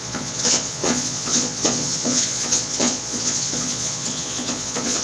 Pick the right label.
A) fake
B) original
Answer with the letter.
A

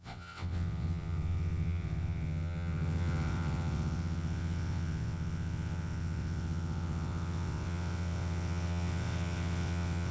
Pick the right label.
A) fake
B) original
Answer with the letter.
A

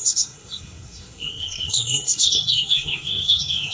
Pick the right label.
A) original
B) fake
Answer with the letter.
B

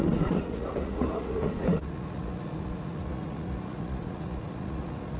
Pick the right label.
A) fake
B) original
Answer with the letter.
A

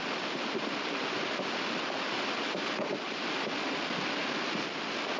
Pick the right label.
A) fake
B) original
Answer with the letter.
B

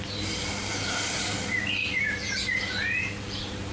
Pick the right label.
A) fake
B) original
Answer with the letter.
A